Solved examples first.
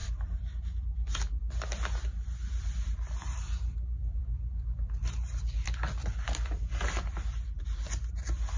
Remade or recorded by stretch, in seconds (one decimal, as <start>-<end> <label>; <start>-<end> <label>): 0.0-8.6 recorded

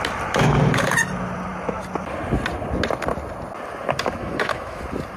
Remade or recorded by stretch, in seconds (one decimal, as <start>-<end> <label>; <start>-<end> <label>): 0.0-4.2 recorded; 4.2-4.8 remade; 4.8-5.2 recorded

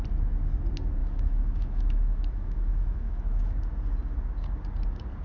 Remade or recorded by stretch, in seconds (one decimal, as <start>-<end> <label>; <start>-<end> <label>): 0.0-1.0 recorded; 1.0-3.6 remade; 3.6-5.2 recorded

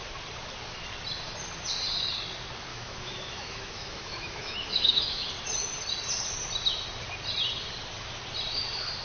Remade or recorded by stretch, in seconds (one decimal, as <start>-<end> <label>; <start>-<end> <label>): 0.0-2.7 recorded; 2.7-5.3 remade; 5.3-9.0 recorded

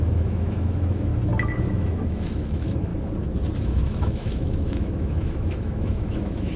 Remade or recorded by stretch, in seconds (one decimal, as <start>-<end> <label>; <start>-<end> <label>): 0.0-1.1 remade; 1.1-1.7 recorded; 1.7-2.9 remade; 2.9-3.6 recorded; 3.6-6.6 remade

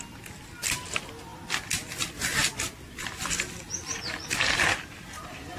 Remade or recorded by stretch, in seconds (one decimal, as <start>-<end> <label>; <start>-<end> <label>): 0.0-5.6 recorded

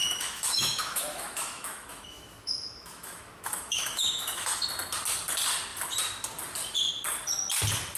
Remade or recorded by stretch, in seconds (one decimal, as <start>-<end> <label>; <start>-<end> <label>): 0.0-4.6 remade; 4.6-8.0 recorded

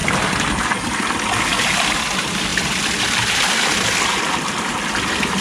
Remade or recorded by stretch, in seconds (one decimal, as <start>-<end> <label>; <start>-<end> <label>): 0.0-5.4 recorded